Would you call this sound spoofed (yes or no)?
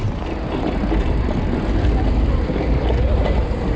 no